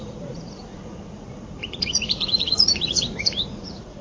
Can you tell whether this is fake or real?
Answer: fake